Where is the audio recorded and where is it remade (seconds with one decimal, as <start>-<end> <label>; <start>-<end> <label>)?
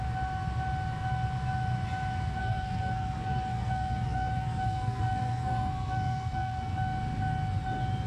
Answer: 0.0-2.4 recorded; 2.4-6.7 remade; 6.7-8.1 recorded